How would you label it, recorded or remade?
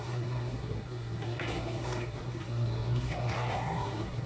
remade